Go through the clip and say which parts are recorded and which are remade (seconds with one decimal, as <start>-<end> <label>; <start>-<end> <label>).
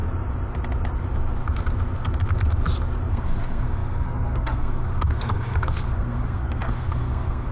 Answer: 0.0-3.1 recorded; 3.1-7.5 remade